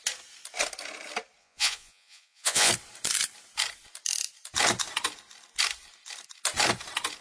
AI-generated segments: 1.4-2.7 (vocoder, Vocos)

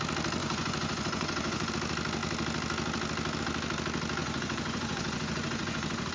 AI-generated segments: 0.4-1.7 (vocoder, Vocos); 4.2-6.1

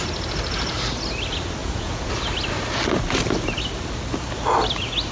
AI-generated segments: 1.6-2.1 (vocoder, Vocos)

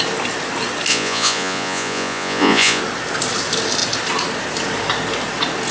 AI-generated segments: 0.9-2.8 (vocoder, Vocos)

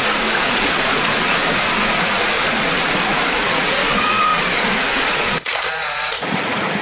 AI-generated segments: 0.0-6.8 (vocoder, Vocos)